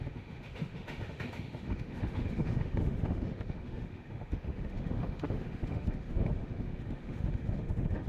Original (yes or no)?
no